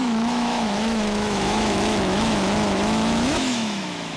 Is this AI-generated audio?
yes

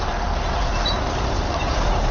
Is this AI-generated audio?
no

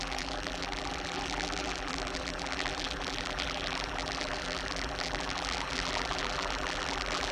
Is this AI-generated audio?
yes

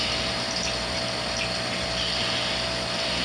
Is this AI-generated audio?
no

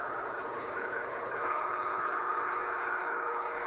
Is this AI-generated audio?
yes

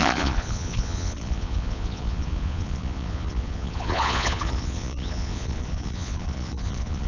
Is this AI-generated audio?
yes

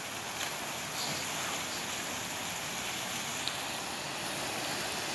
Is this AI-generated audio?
no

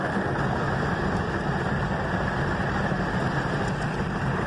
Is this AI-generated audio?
no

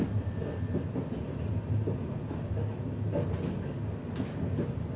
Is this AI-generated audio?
no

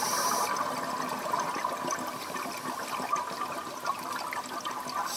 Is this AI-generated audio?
no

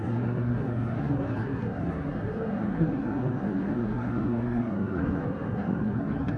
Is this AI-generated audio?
yes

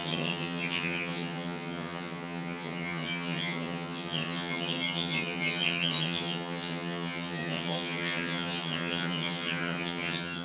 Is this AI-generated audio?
yes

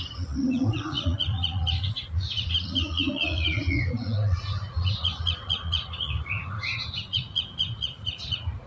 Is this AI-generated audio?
yes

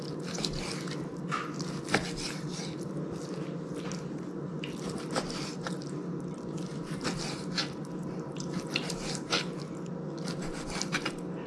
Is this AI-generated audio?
no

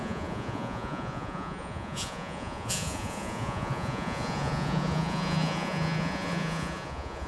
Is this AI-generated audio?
yes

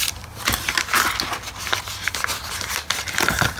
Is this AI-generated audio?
no